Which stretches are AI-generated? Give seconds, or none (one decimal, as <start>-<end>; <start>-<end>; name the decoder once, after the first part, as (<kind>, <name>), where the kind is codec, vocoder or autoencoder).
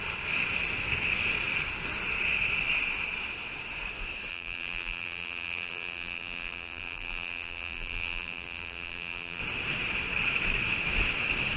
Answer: 4.3-9.4 (vocoder, BigVGAN v2)